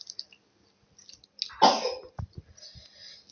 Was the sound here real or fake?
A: real